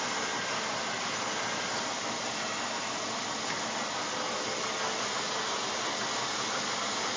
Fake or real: real